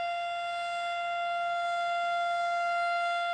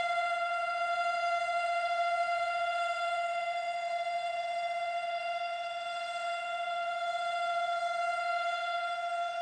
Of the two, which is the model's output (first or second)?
second